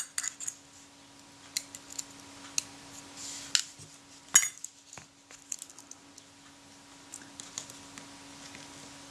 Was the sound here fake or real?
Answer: real